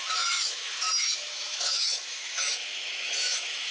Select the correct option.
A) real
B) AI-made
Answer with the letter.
B